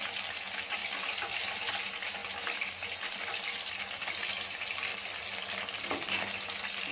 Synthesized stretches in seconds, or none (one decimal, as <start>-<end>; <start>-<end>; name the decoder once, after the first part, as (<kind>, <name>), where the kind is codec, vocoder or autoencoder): 2.2-3.8 (vocoder, BigVGAN v2)